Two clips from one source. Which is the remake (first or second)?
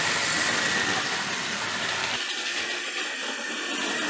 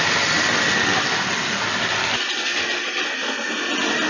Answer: first